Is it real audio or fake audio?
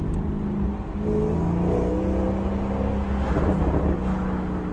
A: real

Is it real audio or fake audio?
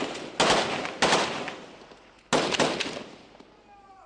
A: real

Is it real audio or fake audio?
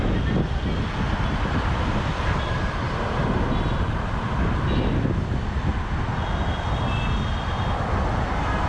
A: real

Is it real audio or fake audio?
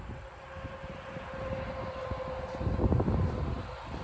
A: real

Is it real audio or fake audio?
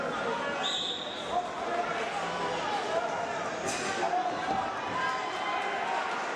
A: real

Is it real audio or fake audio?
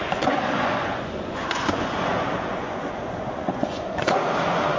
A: fake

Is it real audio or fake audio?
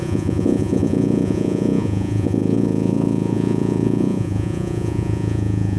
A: fake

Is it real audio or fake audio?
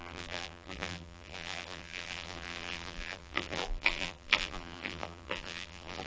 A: fake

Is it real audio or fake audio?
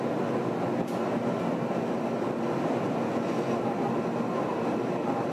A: real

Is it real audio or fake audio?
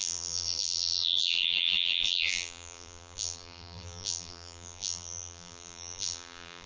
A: fake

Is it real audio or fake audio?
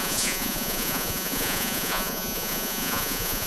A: fake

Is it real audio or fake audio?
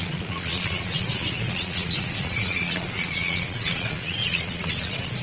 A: fake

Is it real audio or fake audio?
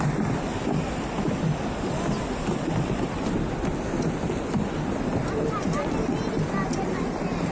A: real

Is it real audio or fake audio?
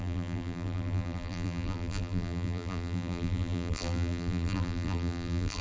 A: fake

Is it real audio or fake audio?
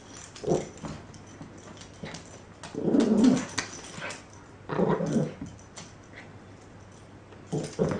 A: real